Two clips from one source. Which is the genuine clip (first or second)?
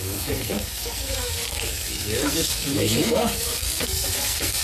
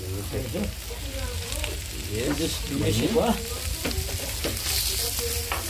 second